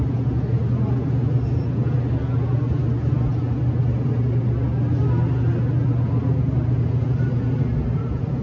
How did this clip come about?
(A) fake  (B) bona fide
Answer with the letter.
B